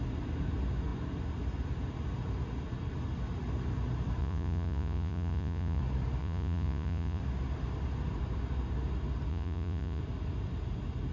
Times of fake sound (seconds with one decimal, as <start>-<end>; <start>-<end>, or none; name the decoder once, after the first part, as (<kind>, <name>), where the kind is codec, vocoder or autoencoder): 4.2-5.8 (vocoder, Vocos); 6.2-7.2; 9.3-10.0